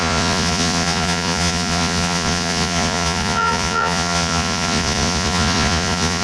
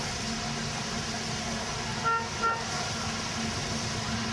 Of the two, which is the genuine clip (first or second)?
second